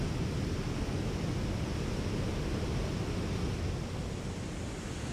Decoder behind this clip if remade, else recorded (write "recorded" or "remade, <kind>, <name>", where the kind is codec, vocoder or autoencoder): recorded